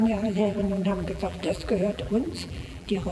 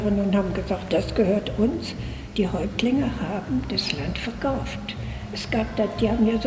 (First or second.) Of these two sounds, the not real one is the first